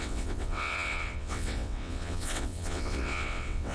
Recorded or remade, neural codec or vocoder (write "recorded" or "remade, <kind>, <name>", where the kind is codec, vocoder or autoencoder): remade, vocoder, WaveNeXt